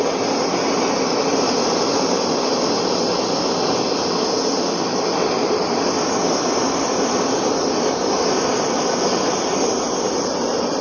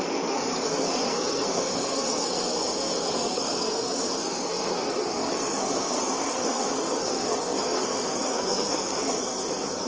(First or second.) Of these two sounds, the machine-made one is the second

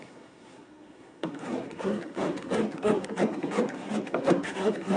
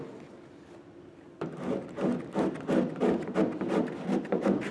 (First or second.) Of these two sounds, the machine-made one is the first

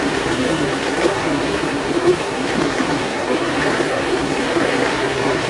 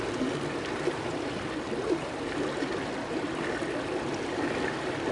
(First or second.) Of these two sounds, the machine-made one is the first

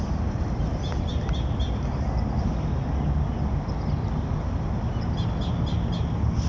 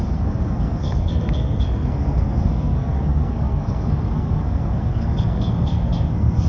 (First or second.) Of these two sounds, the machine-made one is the second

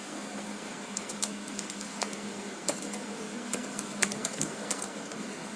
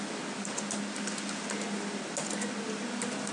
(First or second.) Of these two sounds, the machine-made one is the first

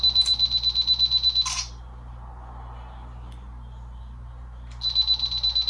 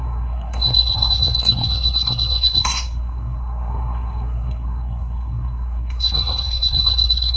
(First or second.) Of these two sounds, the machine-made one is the second